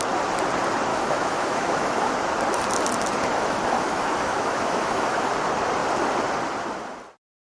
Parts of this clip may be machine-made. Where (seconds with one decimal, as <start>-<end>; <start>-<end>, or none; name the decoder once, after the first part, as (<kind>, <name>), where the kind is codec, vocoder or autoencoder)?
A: 0.9-2.1 (autoencoder, DAC-VAE); 3.3-5.3